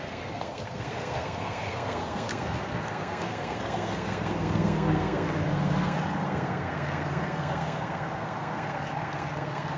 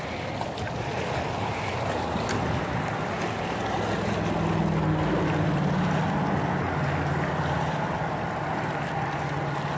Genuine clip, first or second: second